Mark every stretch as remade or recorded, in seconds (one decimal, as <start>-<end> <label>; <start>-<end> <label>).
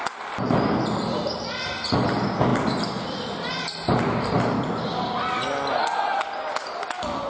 0.0-7.3 recorded